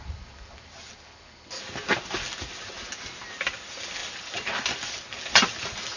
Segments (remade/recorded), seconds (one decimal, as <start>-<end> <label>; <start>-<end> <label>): 0.0-6.0 recorded